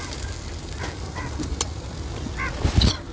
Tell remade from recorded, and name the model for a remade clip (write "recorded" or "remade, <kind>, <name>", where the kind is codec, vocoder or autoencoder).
recorded